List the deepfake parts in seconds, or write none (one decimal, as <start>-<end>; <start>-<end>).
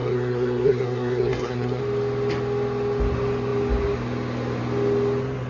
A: 0.0-1.8